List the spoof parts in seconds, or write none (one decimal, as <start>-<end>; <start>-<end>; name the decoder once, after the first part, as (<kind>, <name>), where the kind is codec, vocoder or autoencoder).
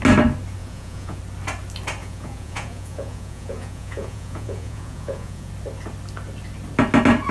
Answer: 0.6-1.2 (vocoder, Vocos); 2.0-5.5